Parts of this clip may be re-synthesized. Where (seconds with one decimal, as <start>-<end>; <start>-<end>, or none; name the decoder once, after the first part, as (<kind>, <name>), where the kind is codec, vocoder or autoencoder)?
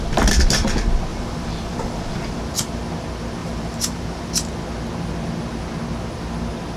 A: 1.1-2.4 (vocoder, BigVGAN v2); 3.4-4.3